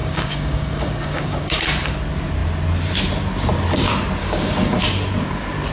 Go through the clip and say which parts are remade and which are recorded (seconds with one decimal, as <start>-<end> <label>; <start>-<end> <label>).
0.0-1.6 remade; 1.6-4.2 recorded; 4.2-4.8 remade; 4.8-5.7 recorded

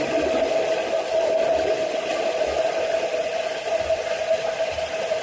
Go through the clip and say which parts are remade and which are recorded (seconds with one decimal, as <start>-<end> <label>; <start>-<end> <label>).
0.0-5.2 recorded

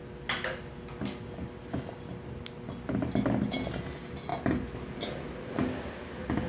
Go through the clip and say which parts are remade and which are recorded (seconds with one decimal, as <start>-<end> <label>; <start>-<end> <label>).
0.0-6.5 recorded

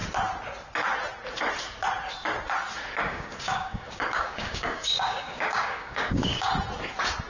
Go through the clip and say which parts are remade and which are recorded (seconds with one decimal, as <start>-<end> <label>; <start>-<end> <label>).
0.0-3.0 recorded; 3.0-6.5 remade; 6.5-7.3 recorded

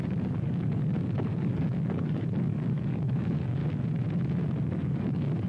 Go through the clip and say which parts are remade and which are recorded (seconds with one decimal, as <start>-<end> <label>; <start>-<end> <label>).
0.0-3.6 remade; 3.6-4.6 recorded; 4.6-5.5 remade

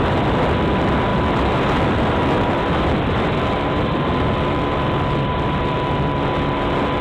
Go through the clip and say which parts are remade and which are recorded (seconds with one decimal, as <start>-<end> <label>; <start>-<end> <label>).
0.0-7.0 recorded

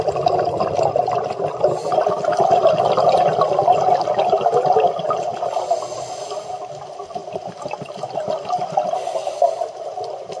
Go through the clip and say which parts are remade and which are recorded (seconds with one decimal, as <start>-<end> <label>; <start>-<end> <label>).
0.0-10.4 recorded